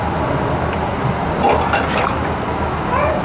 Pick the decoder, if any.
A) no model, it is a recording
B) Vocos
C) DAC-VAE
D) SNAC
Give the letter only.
A